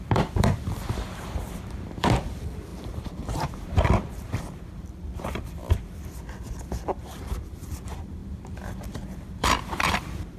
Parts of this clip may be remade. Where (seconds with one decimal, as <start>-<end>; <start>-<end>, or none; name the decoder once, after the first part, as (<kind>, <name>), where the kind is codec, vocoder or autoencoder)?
0.0-10.4 (vocoder, BigVGAN v2)